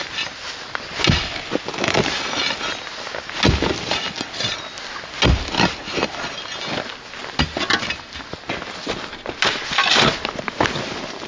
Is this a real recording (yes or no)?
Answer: yes